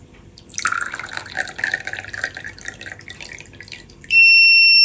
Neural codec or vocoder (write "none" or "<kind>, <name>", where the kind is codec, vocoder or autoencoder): none